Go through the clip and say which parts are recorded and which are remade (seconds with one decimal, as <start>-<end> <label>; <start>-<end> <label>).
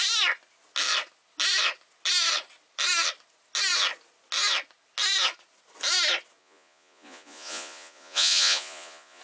0.0-6.4 recorded; 6.4-9.2 remade